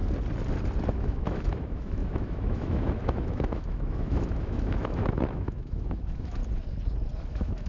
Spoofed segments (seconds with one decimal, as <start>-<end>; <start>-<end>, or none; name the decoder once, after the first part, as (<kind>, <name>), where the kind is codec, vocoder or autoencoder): 0.9-6.4 (autoencoder, DAC-VAE); 7.3-7.7